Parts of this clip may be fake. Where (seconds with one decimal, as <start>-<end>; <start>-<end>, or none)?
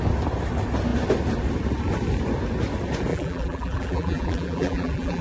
3.1-5.2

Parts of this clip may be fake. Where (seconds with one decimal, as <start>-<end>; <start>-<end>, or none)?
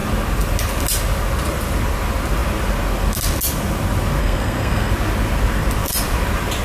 4.2-4.9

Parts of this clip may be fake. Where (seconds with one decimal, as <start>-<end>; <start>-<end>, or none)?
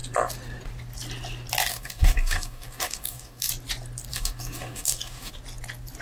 1.7-3.5; 4.1-5.3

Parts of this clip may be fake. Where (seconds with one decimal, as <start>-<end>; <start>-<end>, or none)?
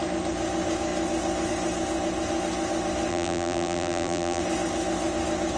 3.1-4.4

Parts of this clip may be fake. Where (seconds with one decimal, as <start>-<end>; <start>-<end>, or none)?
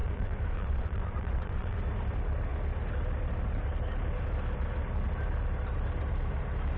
0.0-1.8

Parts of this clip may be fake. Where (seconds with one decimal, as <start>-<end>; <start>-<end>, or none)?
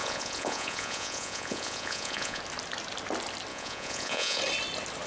0.0-2.4; 3.5-4.4